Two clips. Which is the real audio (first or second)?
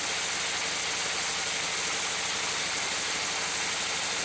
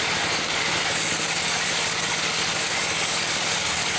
first